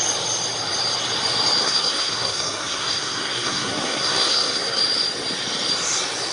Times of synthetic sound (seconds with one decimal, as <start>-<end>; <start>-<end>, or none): 1.6-4.8